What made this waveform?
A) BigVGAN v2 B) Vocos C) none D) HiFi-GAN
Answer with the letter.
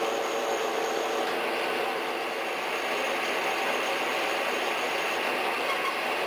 C